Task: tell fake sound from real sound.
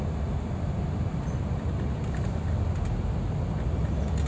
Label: real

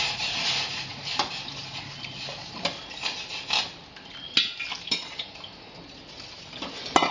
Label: real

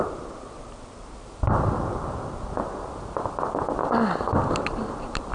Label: real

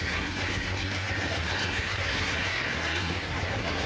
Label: fake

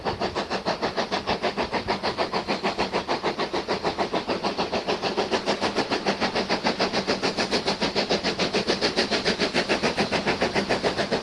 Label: real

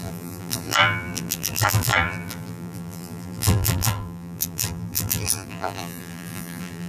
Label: fake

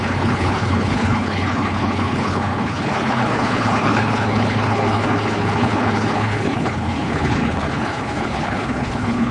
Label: fake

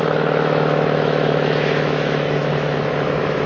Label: fake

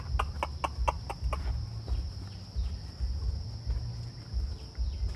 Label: real